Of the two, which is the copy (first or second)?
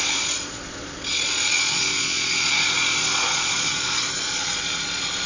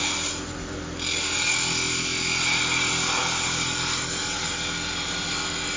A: first